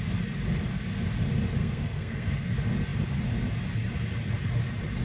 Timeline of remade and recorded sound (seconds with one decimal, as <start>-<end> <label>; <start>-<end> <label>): 0.0-1.6 recorded; 1.6-2.5 remade; 2.5-5.0 recorded